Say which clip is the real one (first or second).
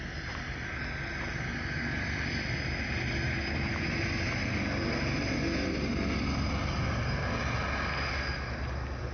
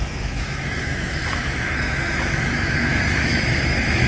first